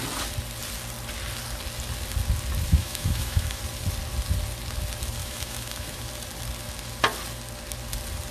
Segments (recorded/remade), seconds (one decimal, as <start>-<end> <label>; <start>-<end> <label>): 0.0-2.7 recorded; 2.7-3.6 remade; 3.6-5.2 recorded; 5.2-6.0 remade; 6.0-8.3 recorded